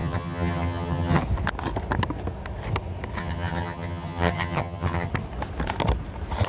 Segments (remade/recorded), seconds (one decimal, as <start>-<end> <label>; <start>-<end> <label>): 0.0-1.2 remade; 1.2-3.2 recorded; 3.2-5.1 remade; 5.1-6.5 recorded